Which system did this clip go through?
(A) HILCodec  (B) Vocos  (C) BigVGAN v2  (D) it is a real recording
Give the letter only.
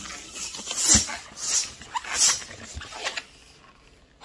D